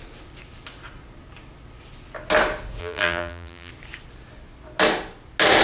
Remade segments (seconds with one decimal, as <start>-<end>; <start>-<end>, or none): 2.8-3.7